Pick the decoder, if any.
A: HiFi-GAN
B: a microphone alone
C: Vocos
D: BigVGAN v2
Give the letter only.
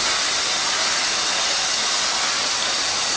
B